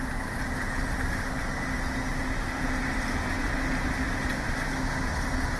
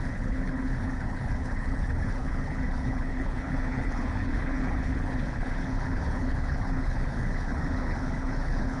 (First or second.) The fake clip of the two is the second